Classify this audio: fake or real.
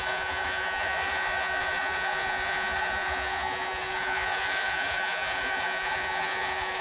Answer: fake